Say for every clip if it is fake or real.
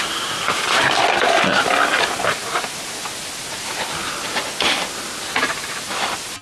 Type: real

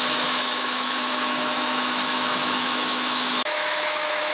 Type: fake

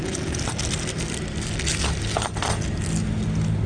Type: real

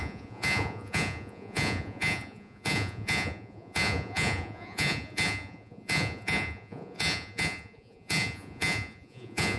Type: fake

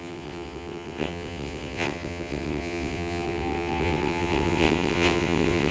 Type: fake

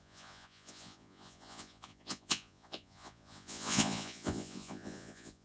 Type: fake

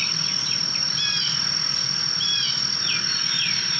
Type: real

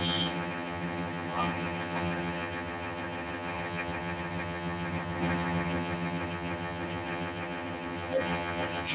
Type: fake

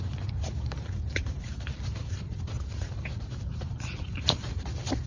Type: fake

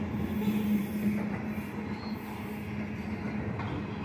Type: real